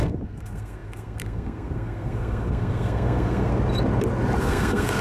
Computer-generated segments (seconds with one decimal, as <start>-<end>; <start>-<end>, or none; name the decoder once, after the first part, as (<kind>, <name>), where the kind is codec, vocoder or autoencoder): 0.0-3.5 (codec, SNAC); 4.4-5.0